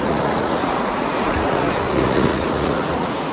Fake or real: fake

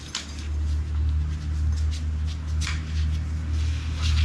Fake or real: real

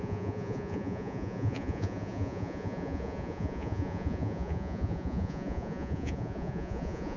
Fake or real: fake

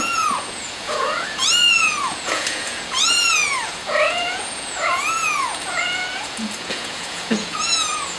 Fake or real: fake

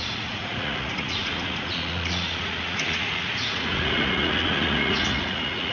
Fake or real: fake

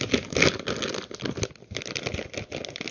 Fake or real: real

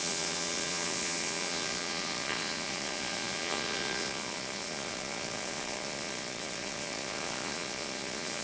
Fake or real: fake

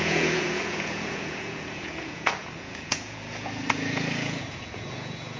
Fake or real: fake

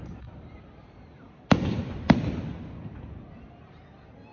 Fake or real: real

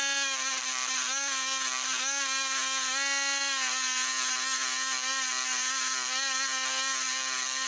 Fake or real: real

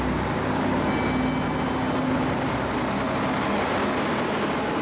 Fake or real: real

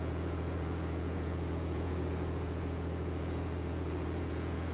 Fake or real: fake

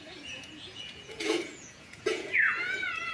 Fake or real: fake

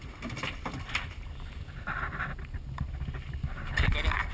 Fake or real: real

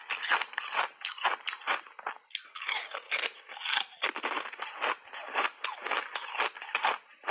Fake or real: real